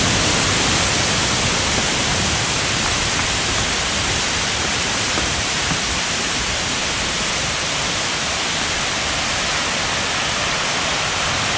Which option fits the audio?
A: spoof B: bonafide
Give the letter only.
B